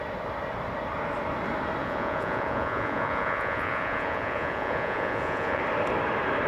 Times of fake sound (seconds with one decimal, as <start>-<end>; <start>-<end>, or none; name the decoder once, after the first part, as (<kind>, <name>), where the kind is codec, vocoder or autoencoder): 1.8-5.6 (vocoder, Vocos)